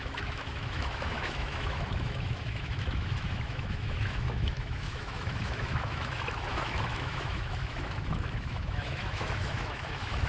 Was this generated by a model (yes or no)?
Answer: yes